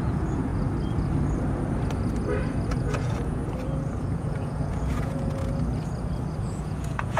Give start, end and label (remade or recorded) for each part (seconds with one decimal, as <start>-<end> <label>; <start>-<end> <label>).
0.0-0.5 remade; 0.5-2.7 recorded; 2.7-3.4 remade; 3.4-4.0 recorded; 4.0-5.4 remade; 5.4-6.4 recorded; 6.4-7.2 remade